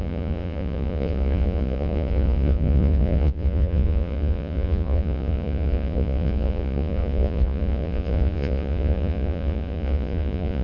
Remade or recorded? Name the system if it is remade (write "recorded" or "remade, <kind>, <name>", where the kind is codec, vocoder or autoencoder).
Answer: remade, vocoder, Vocos